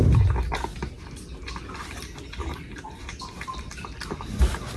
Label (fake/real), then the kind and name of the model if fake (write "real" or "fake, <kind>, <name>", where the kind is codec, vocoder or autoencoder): real